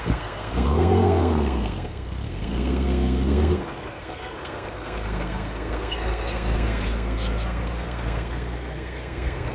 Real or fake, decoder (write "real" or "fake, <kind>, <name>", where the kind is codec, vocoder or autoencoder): fake, codec, SNAC